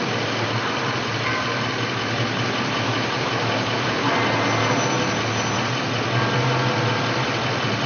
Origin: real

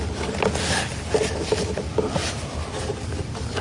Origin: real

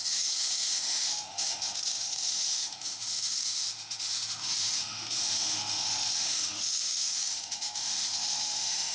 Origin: fake